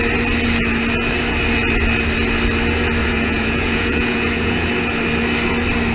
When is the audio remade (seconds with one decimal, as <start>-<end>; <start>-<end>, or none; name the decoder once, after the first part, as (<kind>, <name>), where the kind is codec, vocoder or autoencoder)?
3.0-4.7 (vocoder, Vocos)